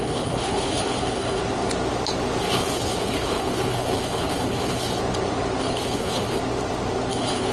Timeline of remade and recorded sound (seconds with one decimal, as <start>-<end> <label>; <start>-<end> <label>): 0.0-1.4 remade; 1.4-2.4 recorded; 2.4-5.0 remade; 5.0-5.6 recorded; 5.6-6.4 remade; 6.4-7.1 recorded; 7.1-7.5 remade